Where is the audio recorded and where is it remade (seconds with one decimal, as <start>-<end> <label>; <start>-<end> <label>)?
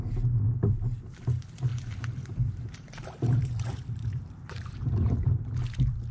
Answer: 0.0-1.7 recorded; 1.7-5.4 remade; 5.4-6.1 recorded